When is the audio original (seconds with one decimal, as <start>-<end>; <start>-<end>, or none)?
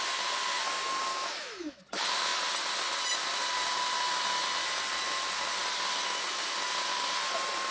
0.0-1.1; 1.8-7.7